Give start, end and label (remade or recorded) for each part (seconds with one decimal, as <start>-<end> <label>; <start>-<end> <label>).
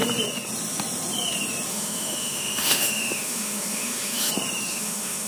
0.0-1.7 recorded; 1.7-4.3 remade; 4.3-4.7 recorded; 4.7-5.3 remade